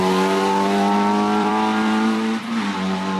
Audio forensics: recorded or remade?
remade